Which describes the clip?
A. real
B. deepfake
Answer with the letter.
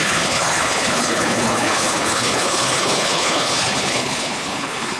B